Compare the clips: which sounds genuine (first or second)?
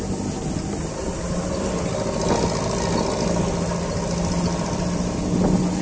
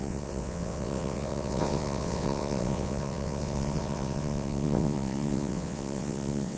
first